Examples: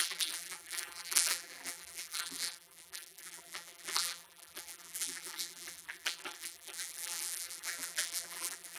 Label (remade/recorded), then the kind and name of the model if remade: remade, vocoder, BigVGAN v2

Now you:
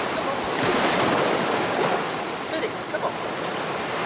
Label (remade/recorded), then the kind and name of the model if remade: remade, vocoder, BigVGAN v2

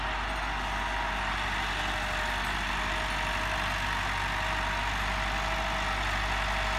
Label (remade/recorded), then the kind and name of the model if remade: recorded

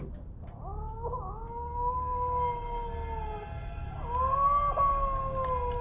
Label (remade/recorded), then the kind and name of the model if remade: recorded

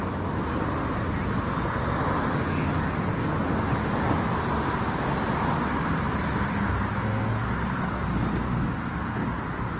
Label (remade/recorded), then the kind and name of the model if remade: recorded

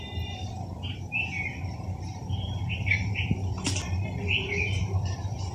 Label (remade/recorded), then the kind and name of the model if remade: remade, vocoder, BigVGAN v2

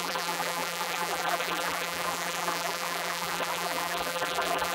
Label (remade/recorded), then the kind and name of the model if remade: remade, vocoder, BigVGAN v2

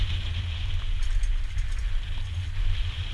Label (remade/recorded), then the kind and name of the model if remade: recorded